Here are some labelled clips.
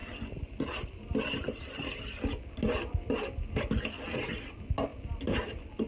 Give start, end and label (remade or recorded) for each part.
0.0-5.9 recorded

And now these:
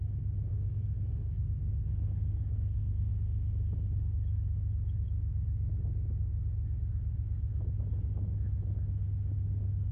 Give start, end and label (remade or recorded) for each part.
0.0-0.5 recorded; 0.5-3.1 remade; 3.1-9.9 recorded